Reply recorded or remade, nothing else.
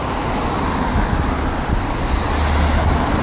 recorded